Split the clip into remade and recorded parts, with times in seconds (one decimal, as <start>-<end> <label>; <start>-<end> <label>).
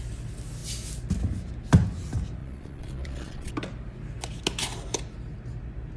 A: 0.0-2.4 recorded; 2.4-3.5 remade; 3.5-6.0 recorded